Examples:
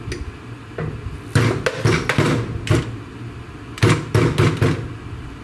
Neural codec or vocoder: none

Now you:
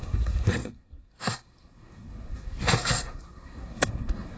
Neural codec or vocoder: codec, SNAC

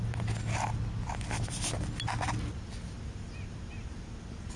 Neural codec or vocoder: none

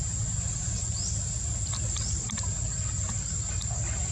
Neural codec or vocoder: none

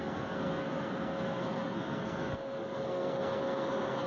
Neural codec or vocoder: codec, SNAC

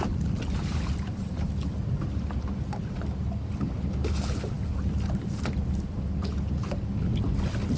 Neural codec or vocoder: none